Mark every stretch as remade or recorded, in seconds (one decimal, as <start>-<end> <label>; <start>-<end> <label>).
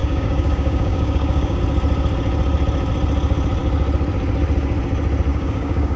0.0-1.6 remade; 1.6-5.3 recorded; 5.3-6.0 remade